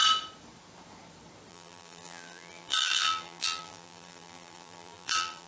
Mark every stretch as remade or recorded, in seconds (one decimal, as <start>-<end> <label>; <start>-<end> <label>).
0.0-1.5 recorded; 1.5-5.5 remade